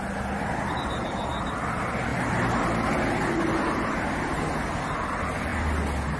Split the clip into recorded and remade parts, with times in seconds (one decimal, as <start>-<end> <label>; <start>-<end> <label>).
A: 0.0-6.2 recorded